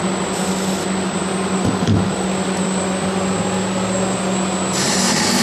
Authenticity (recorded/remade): recorded